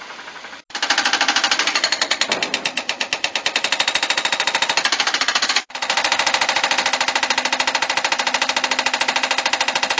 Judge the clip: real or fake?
real